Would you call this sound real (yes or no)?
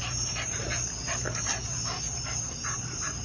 no